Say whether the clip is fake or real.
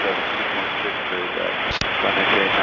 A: real